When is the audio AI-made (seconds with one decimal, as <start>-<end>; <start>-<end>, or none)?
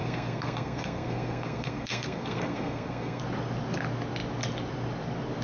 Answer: 0.0-3.2